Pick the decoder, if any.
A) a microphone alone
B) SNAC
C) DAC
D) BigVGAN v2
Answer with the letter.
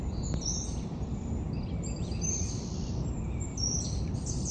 A